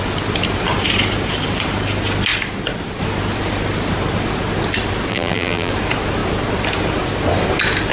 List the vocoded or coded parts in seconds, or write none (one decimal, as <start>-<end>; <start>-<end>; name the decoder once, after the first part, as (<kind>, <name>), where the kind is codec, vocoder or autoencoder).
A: 5.1-5.7 (vocoder, BigVGAN v2)